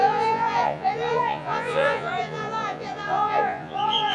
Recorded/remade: remade